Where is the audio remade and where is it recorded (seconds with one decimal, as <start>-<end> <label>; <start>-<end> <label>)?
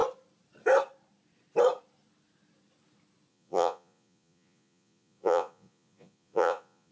0.0-3.3 recorded; 3.3-6.9 remade